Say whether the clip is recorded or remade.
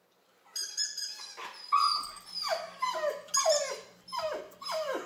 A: recorded